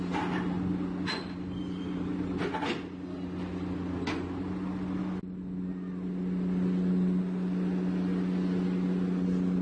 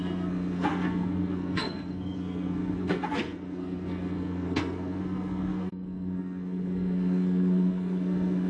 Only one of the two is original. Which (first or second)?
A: first